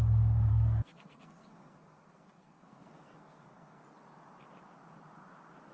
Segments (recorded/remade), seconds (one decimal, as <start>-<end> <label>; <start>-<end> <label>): 0.0-0.5 recorded; 0.5-3.8 remade; 3.8-5.7 recorded